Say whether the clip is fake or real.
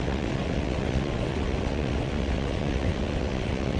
fake